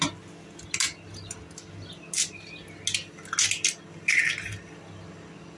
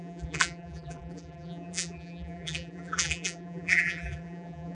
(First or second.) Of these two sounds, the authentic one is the first